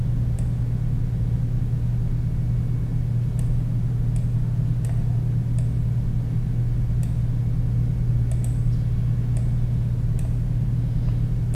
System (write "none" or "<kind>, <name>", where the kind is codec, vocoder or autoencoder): none